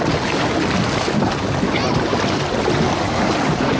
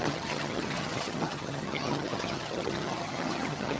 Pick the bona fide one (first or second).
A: first